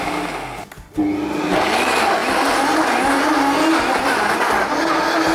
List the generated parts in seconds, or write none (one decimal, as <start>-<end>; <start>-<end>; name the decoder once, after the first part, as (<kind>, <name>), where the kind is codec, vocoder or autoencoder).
none